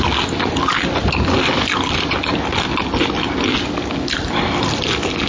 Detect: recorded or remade recorded